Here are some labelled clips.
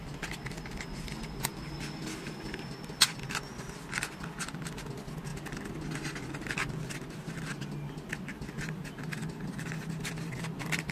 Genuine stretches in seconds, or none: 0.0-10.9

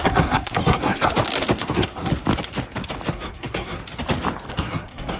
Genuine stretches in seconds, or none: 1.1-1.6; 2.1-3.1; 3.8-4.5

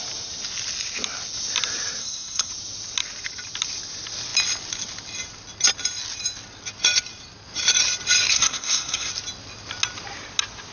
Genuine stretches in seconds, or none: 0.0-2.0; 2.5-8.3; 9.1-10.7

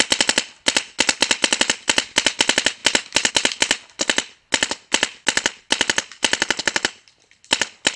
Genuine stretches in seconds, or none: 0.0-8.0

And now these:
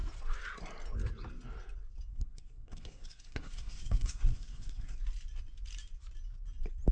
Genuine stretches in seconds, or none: 0.0-2.1; 5.0-6.9

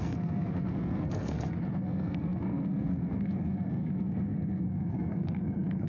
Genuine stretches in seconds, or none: none

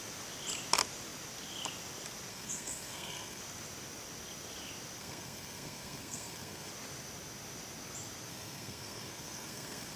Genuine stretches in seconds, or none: 0.0-2.3; 3.4-5.0; 6.7-8.3

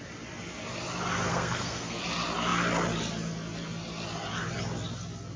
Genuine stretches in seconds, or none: 0.0-1.3; 2.0-5.4